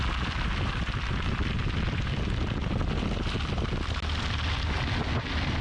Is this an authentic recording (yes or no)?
yes